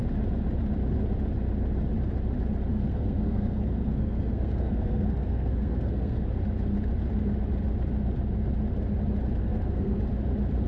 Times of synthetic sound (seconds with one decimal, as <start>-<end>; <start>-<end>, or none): 2.7-6.3; 9.4-10.0